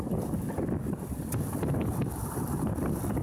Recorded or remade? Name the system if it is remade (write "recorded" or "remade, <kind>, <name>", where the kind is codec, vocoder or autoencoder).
recorded